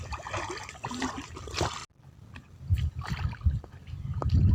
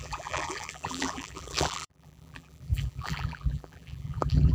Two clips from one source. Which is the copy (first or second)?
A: second